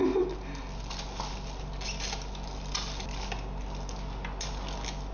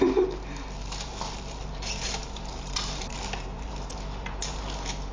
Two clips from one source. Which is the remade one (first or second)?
second